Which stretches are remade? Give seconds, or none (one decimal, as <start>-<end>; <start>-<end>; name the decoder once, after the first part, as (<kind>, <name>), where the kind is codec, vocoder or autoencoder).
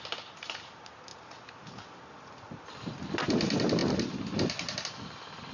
none